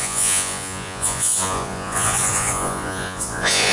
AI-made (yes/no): yes